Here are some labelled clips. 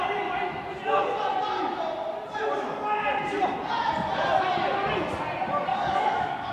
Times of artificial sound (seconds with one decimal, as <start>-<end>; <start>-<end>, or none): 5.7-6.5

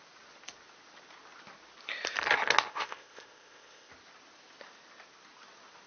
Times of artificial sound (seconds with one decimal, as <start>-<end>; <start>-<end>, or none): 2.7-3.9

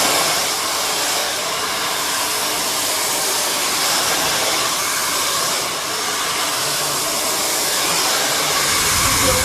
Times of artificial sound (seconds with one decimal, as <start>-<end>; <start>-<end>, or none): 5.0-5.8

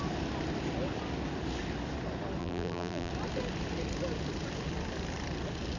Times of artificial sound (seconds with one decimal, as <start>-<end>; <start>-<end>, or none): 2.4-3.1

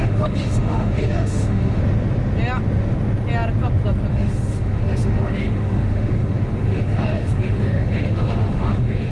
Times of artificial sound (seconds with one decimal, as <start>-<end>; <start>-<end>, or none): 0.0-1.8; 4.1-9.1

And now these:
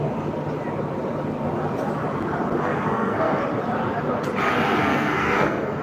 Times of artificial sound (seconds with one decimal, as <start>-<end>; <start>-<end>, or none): 2.6-3.4; 4.8-5.8

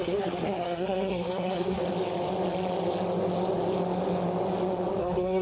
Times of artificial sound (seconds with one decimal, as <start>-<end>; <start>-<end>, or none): 0.0-1.8; 5.0-5.4

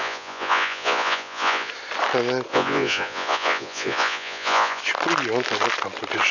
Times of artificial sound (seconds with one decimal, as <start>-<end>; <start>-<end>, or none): 0.0-1.7; 2.5-4.8